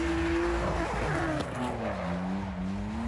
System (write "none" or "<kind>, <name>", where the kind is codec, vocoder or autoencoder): none